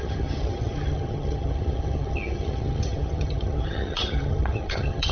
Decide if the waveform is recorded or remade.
remade